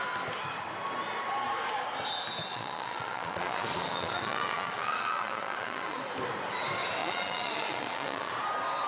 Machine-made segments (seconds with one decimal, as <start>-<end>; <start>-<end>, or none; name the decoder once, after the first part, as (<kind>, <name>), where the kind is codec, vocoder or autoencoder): 2.5-6.0 (vocoder, Vocos); 7.0-8.3